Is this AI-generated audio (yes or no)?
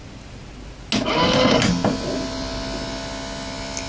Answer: no